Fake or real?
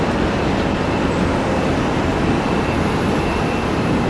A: real